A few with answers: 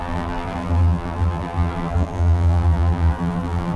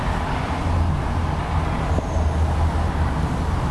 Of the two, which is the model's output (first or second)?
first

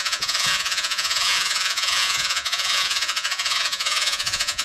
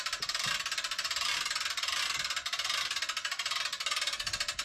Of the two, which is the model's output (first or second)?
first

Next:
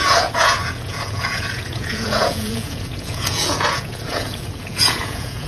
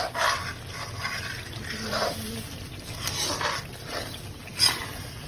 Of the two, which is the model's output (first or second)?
first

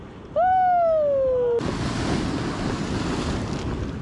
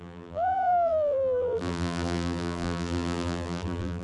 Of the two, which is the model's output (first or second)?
second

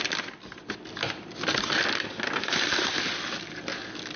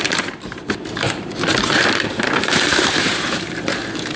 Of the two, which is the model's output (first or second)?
second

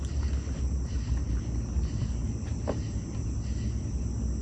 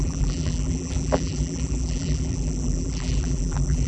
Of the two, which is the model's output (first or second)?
second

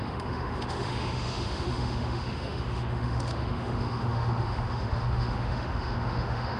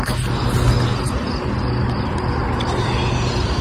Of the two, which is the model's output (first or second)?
first